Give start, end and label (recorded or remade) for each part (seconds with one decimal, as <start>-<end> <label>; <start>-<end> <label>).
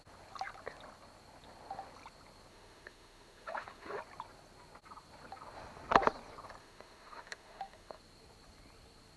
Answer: 0.0-2.5 recorded; 2.5-4.0 remade; 4.0-6.6 recorded; 6.6-8.0 remade; 8.0-9.2 recorded